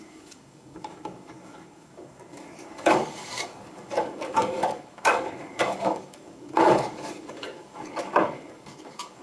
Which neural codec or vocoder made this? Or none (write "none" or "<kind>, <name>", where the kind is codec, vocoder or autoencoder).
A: codec, DAC